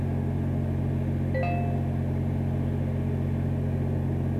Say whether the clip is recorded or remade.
recorded